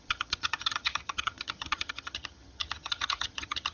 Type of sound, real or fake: fake